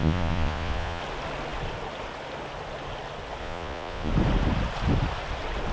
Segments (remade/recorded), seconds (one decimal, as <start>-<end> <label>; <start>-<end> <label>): 0.0-1.0 remade; 1.0-3.4 recorded; 3.4-4.1 remade; 4.1-5.7 recorded

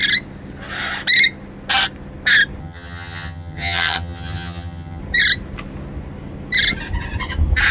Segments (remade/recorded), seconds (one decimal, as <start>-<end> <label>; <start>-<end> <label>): 0.0-2.6 recorded; 2.6-5.0 remade; 5.0-7.7 recorded

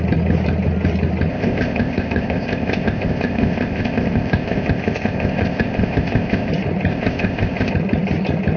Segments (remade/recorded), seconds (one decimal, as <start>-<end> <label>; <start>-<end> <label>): 0.0-1.3 recorded; 1.3-6.5 remade; 6.5-6.9 recorded; 6.9-7.7 remade; 7.7-8.6 recorded

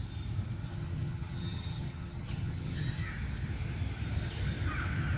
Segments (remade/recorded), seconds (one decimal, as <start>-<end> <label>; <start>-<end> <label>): 0.0-0.6 recorded; 0.6-3.1 remade; 3.1-5.2 recorded

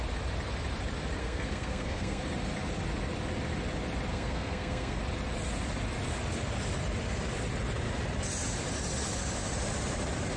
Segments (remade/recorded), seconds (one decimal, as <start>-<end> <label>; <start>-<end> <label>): 0.0-1.2 recorded; 1.2-2.2 remade; 2.2-4.1 recorded; 4.1-5.0 remade; 5.0-10.4 recorded

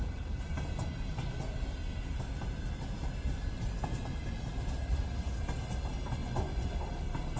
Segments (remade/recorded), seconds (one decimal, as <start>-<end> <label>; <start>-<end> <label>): 0.0-6.2 recorded; 6.2-6.7 remade; 6.7-7.4 recorded

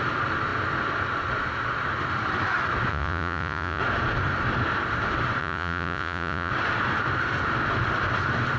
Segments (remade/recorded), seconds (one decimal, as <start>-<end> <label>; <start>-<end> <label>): 0.0-2.9 recorded; 2.9-3.8 remade; 3.8-5.4 recorded; 5.4-6.5 remade; 6.5-8.6 recorded

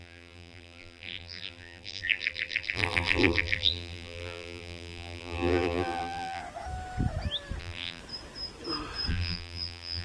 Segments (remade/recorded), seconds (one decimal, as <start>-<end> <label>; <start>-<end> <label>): 0.0-6.4 remade; 6.4-7.6 recorded; 7.6-8.0 remade; 8.0-9.1 recorded; 9.1-10.0 remade